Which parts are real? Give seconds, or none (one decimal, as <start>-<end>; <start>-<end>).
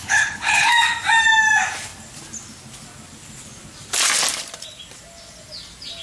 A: 0.7-6.0